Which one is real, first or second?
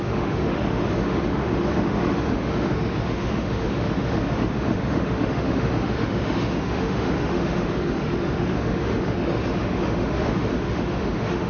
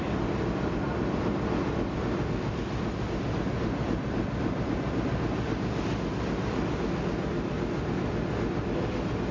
second